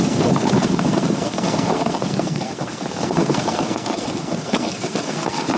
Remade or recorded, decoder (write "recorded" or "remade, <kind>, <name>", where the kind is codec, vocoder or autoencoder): remade, codec, SNAC